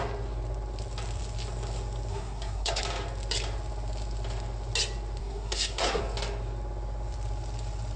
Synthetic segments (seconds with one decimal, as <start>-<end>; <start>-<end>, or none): 2.1-2.8; 5.2-6.0